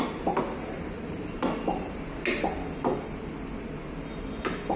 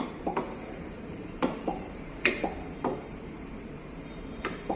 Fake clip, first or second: second